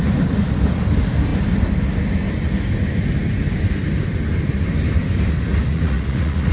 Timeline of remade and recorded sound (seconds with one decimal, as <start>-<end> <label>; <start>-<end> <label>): 0.0-5.7 recorded; 5.7-6.5 remade